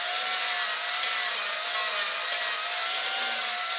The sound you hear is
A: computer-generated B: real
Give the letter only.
B